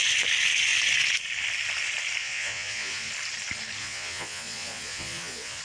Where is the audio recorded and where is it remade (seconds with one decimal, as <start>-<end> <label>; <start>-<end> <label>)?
0.0-2.2 recorded; 2.2-3.1 remade; 3.1-3.8 recorded; 3.8-5.6 remade